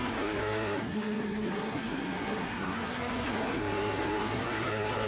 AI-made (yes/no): yes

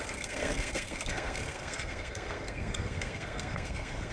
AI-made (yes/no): yes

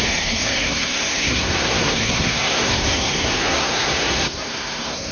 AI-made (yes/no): yes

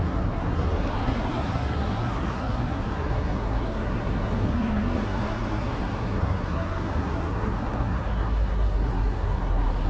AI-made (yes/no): yes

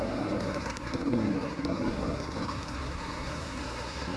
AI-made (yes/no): yes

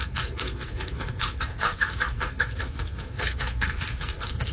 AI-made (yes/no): yes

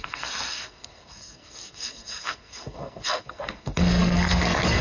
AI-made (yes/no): yes